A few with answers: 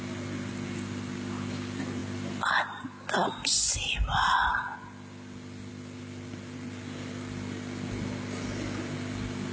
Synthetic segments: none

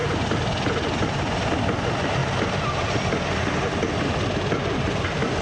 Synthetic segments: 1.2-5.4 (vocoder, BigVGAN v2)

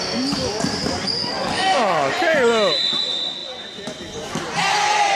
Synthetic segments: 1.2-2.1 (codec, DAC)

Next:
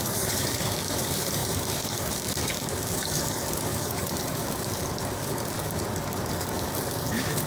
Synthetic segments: 0.0-7.5 (codec, DAC)

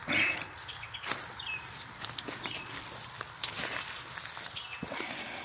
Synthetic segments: none

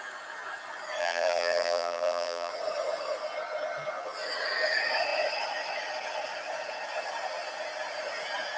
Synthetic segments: 1.0-2.5 (vocoder, BigVGAN v2)